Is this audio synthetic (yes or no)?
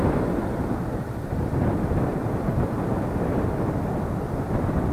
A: no